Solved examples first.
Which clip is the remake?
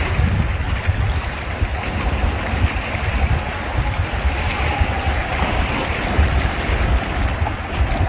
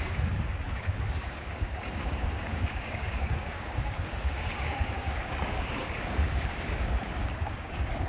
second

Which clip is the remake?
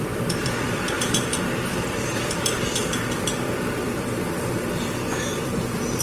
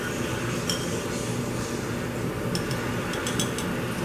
first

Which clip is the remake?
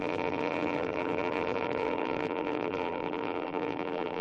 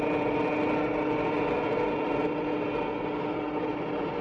first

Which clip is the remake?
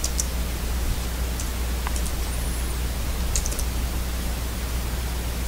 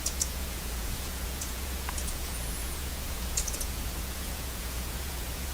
second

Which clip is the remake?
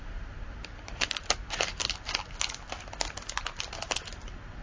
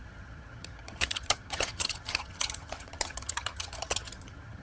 second